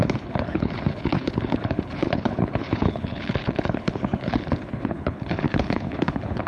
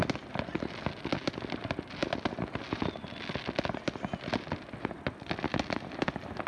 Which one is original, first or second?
second